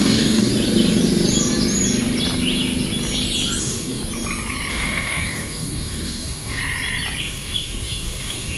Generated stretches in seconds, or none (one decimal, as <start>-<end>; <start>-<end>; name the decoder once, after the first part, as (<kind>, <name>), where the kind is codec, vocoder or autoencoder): 0.0-0.5 (codec, DAC); 3.6-4.0; 4.7-6.6; 7.2-8.6